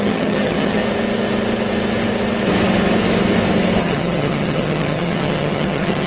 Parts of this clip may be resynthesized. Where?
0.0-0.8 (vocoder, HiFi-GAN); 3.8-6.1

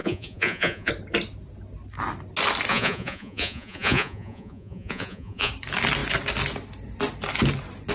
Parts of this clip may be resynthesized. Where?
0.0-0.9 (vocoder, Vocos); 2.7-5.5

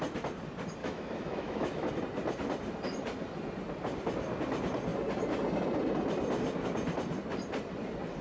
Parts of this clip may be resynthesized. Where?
0.8-1.9 (autoencoder, DAC-VAE)